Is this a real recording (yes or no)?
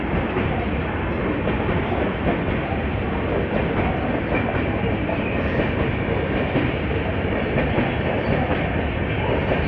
yes